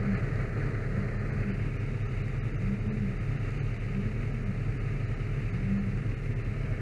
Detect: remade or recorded recorded